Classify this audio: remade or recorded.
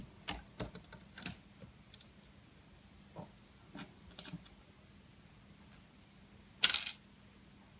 recorded